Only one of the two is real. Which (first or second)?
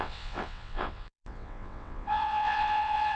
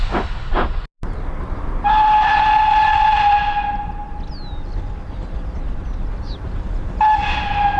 second